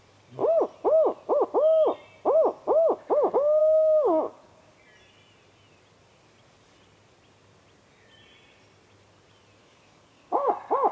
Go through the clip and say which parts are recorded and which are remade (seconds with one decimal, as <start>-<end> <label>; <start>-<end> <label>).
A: 0.0-3.6 recorded; 3.6-4.8 remade; 4.8-9.6 recorded; 9.6-10.5 remade; 10.5-10.9 recorded